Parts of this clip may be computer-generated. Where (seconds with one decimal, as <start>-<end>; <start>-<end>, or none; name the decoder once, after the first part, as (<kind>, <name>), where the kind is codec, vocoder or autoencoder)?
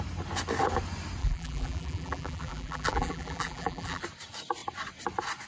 1.2-4.0 (vocoder, BigVGAN v2)